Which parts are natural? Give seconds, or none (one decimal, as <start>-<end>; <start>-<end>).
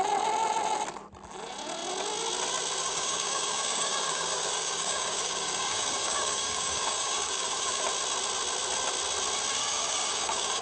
0.0-2.8; 7.8-9.6